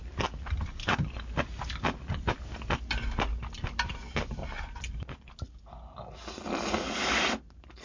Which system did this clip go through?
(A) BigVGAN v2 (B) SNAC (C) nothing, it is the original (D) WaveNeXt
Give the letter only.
C